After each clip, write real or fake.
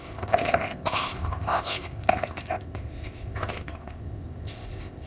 fake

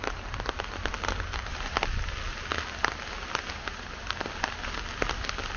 real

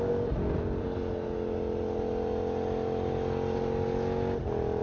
real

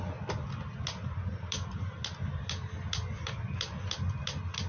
real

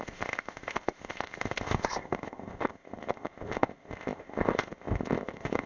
fake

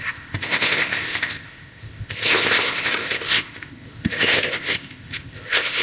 fake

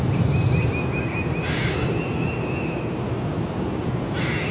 real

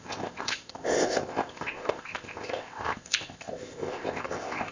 fake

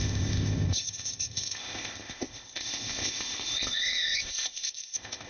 fake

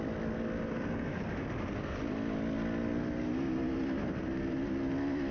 real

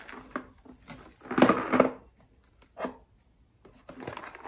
real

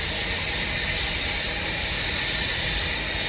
real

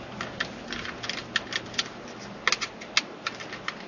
real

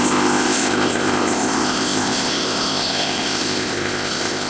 fake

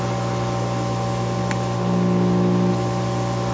real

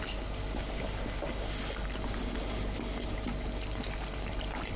real